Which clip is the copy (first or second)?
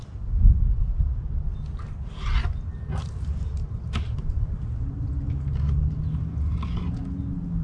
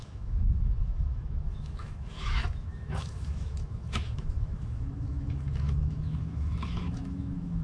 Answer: second